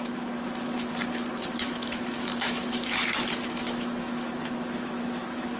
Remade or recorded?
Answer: remade